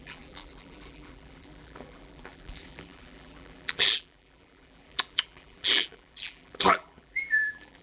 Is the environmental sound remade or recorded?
remade